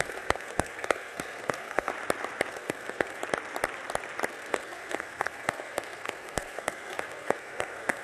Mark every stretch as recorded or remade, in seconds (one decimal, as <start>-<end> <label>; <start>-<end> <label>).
0.0-1.9 remade; 1.9-2.5 recorded; 2.5-3.2 remade; 3.2-4.3 recorded; 4.3-8.0 remade